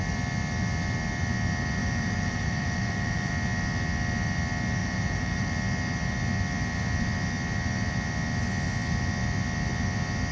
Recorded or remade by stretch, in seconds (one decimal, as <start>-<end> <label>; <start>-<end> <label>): 0.0-1.8 recorded; 1.8-3.3 remade; 3.3-4.8 recorded; 4.8-5.5 remade; 5.5-10.3 recorded